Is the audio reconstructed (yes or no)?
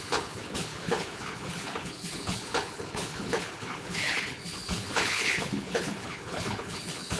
yes